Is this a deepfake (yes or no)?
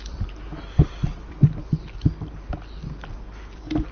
no